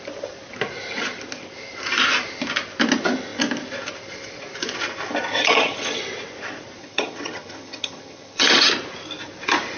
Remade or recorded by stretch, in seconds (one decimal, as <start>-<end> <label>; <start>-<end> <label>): 0.0-5.3 recorded; 5.3-6.0 remade; 6.0-6.8 recorded; 6.8-8.7 remade; 8.7-9.8 recorded